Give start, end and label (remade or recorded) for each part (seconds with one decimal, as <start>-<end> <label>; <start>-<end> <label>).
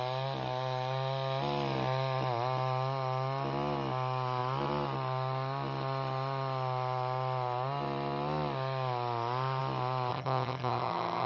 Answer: 0.0-10.1 recorded; 10.1-11.3 remade